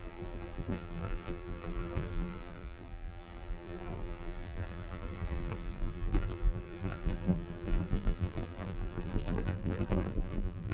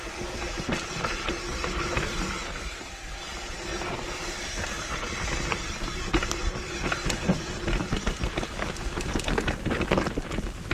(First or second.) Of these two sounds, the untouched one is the second